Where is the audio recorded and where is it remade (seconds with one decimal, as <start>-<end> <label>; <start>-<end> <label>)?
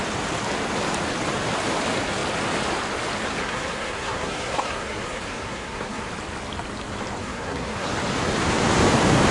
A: 0.0-3.4 recorded; 3.4-6.1 remade; 6.1-7.2 recorded; 7.2-7.9 remade; 7.9-9.3 recorded